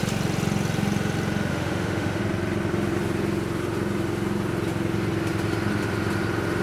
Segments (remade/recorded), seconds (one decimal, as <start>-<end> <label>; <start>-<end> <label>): 0.0-1.5 recorded; 1.5-2.2 remade; 2.2-6.6 recorded